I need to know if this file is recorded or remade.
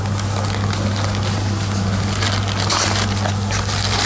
recorded